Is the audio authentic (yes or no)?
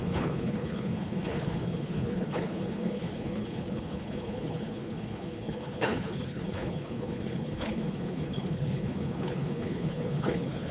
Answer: no